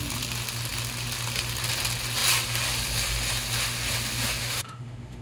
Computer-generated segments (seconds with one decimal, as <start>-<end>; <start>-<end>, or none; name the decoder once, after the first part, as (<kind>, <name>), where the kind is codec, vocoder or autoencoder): 4.4-5.2 (autoencoder, DAC-VAE)